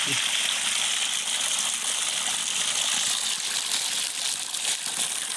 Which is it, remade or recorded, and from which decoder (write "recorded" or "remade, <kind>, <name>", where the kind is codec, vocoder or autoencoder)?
recorded